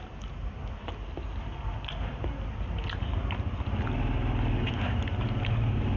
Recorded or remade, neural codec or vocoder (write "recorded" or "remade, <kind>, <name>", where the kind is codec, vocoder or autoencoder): recorded